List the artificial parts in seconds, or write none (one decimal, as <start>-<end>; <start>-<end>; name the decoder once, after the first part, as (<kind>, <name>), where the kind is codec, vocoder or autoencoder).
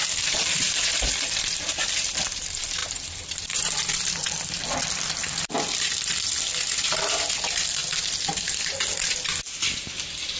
7.8-8.6 (vocoder, BigVGAN v2)